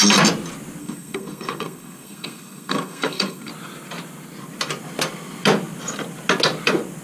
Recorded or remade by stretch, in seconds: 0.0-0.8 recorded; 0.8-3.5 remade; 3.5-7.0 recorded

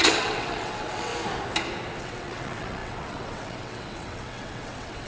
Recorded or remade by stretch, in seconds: 0.0-1.1 remade; 1.1-2.0 recorded; 2.0-5.1 remade

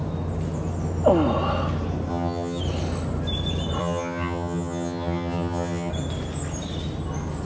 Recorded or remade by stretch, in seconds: 0.0-2.1 recorded; 2.1-2.6 remade; 2.6-3.8 recorded; 3.8-5.9 remade; 5.9-7.4 recorded

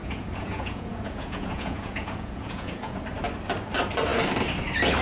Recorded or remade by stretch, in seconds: 0.0-3.0 remade; 3.0-5.0 recorded

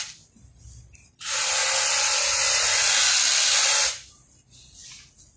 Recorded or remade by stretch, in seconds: 0.0-5.4 recorded